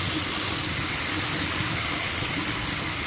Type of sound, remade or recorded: recorded